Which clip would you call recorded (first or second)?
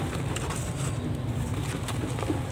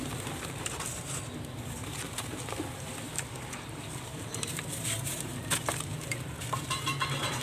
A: first